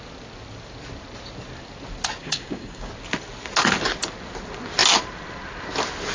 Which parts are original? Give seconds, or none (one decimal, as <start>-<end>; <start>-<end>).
0.0-2.2; 2.9-6.1